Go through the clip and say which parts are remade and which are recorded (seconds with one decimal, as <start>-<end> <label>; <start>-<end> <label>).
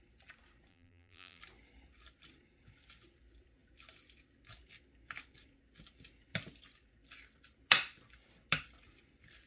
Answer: 0.0-0.7 recorded; 0.7-1.4 remade; 1.4-9.5 recorded